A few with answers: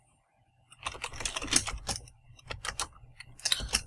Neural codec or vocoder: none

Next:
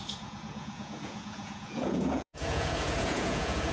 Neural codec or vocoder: vocoder, Vocos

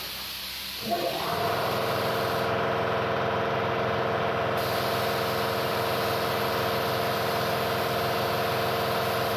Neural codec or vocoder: none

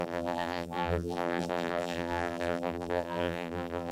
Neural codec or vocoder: vocoder, BigVGAN v2